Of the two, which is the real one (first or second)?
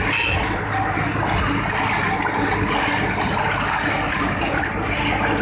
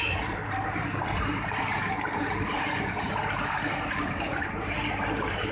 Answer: first